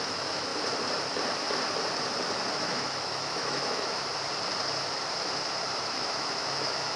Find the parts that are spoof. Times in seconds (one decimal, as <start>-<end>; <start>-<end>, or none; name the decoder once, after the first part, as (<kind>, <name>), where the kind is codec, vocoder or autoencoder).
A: 0.0-0.5 (autoencoder, DAC-VAE); 2.5-4.1; 5.8-7.0